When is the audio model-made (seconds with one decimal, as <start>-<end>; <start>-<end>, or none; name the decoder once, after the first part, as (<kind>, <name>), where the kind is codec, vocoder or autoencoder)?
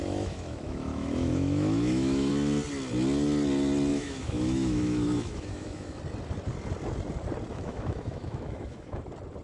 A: 0.0-2.3 (autoencoder, DAC-VAE); 3.9-6.0; 7.5-9.0